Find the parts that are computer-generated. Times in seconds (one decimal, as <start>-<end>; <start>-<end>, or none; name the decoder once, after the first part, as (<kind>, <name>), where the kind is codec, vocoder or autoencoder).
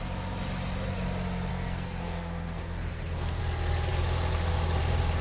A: 1.5-3.4 (codec, SNAC)